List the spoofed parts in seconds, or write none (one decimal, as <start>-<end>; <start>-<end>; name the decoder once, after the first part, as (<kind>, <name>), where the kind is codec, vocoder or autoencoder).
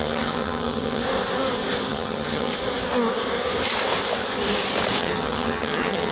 0.0-1.0 (vocoder, HiFi-GAN); 1.9-2.5; 5.0-6.1